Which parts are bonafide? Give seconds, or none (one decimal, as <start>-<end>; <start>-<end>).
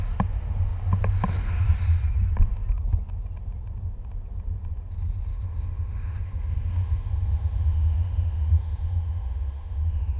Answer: 0.0-5.3